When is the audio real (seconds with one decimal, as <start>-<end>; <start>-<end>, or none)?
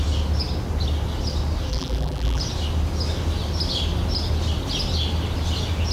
0.0-1.7; 2.4-5.9